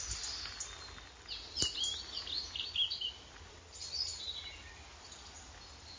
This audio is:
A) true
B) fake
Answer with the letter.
A